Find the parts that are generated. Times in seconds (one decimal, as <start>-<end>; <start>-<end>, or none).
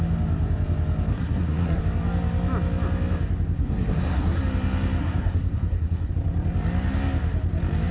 1.1-1.8; 3.6-4.4; 5.0-6.1